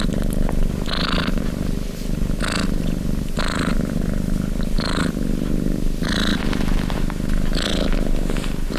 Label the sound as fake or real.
real